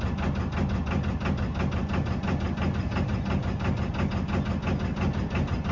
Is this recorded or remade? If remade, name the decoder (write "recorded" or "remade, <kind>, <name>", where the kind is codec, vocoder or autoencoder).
recorded